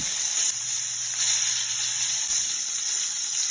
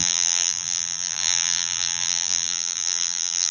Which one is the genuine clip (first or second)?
first